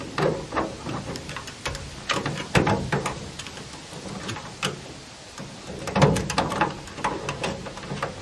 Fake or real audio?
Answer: real